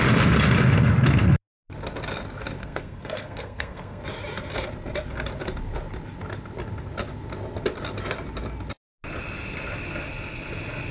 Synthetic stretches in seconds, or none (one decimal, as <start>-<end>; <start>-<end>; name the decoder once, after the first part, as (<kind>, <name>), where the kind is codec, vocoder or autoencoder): 2.6-4.0 (codec, SNAC)